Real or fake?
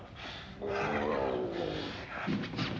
real